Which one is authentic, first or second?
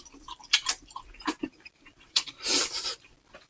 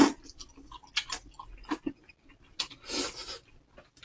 second